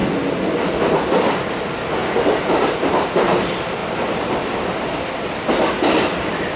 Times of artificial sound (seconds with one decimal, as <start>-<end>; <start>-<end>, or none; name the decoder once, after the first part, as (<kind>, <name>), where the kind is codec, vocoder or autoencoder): 2.0-3.3 (vocoder, BigVGAN v2); 3.8-5.0